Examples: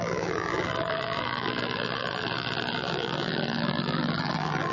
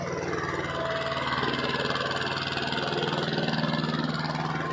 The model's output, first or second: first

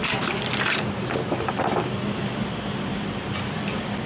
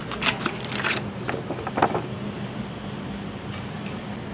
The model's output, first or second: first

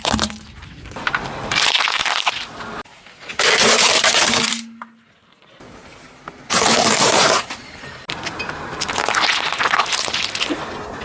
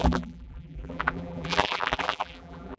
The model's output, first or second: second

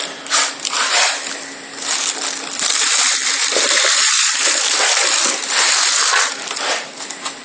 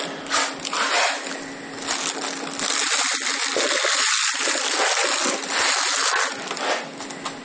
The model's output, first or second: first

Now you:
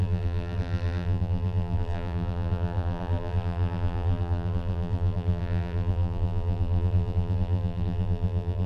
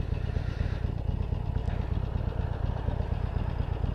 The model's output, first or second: first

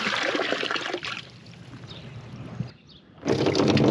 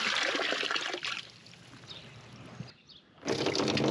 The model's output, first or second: first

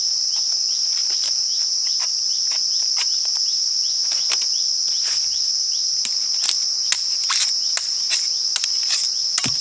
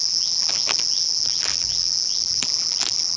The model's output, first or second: second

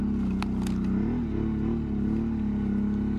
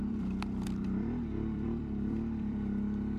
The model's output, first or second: second